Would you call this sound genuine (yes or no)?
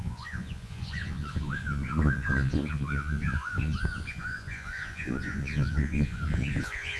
no